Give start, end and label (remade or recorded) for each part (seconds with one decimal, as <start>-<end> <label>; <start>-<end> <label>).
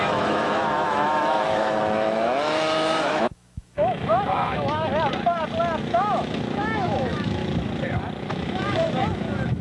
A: 0.0-4.9 remade; 4.9-5.8 recorded; 5.8-7.4 remade; 7.4-8.3 recorded; 8.3-9.6 remade